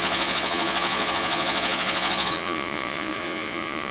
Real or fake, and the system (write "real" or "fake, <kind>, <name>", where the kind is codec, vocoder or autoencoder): fake, vocoder, Vocos